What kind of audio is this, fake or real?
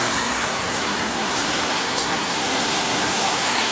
fake